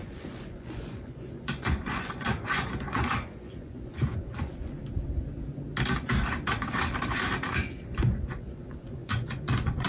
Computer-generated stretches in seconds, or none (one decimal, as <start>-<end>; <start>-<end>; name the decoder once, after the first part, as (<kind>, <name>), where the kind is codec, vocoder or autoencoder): 0.0-4.8 (vocoder, Vocos); 7.5-9.9